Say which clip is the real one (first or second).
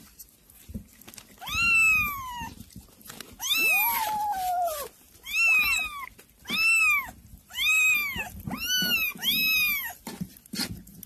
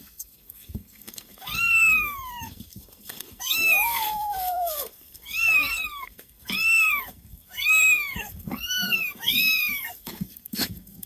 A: first